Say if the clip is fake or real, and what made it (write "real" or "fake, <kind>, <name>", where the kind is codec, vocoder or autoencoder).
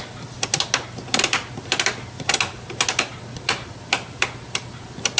real